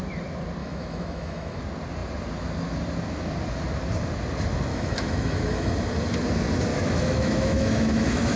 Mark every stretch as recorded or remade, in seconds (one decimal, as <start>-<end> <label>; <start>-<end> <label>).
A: 0.0-0.6 recorded; 0.6-1.6 remade; 1.6-4.7 recorded; 4.7-5.7 remade; 5.7-6.7 recorded; 6.7-8.4 remade